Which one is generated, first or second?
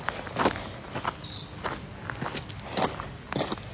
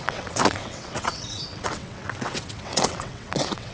second